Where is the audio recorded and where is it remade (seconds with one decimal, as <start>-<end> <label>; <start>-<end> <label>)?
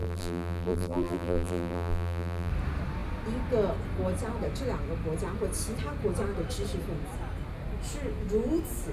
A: 0.0-2.5 remade; 2.5-8.9 recorded